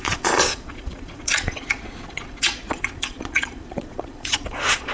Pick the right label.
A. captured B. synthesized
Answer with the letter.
B